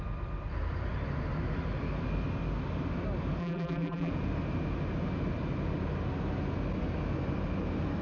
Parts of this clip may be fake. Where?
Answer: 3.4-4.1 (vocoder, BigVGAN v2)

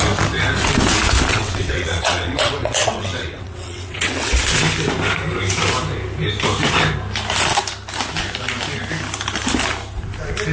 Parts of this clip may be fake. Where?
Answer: 1.3-4.3 (vocoder, WaveNeXt)

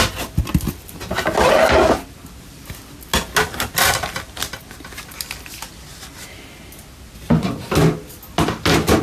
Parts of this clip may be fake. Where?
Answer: none

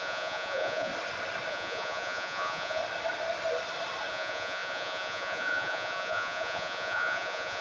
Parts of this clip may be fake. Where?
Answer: 0.0-0.9 (vocoder, Vocos); 1.5-2.8; 4.1-7.6

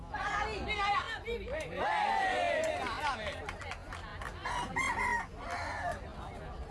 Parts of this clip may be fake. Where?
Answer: none

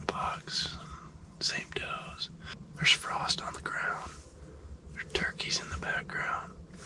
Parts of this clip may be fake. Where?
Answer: 1.8-3.5 (vocoder, BigVGAN v2)